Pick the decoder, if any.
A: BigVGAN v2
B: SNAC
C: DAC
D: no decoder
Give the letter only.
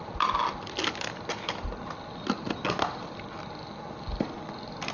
D